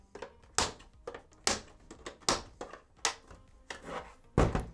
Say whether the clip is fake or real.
real